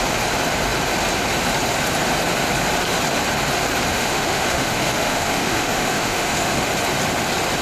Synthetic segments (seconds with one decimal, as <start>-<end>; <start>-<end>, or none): 3.9-6.7